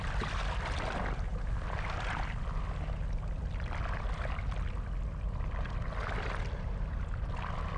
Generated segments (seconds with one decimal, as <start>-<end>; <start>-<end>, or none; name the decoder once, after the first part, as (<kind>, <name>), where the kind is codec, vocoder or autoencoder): none